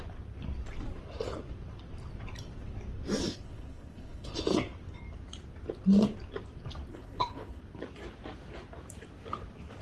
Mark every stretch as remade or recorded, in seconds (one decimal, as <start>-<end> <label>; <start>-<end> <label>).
0.0-3.2 recorded; 3.2-4.4 remade; 4.4-6.9 recorded; 6.9-7.6 remade; 7.6-9.8 recorded